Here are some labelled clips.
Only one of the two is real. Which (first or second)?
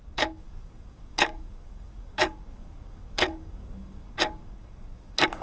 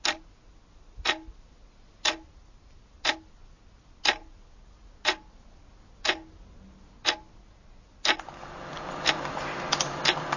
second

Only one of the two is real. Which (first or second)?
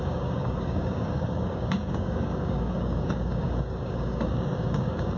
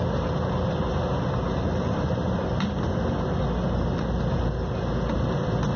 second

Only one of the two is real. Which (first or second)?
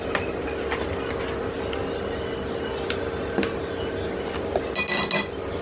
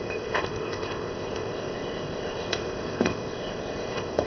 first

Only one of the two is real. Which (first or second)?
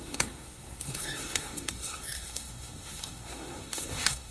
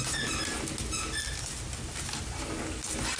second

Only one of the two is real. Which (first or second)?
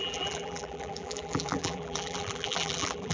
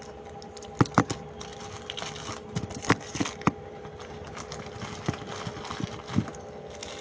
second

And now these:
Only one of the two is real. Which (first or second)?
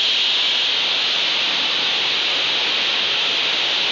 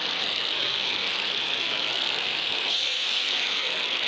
first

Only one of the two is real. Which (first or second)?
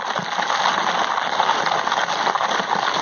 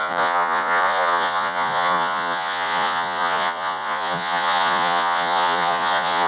first